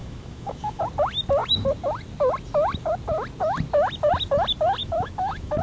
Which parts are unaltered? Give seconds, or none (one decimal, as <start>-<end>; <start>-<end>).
0.8-4.8